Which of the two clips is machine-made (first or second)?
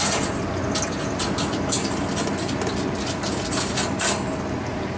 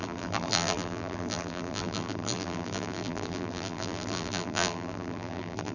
second